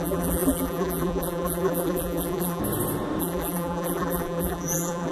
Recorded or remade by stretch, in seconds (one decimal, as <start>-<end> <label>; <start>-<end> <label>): 0.0-2.6 remade; 2.6-3.2 recorded; 3.2-5.1 remade